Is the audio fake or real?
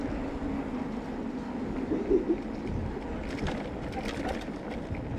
real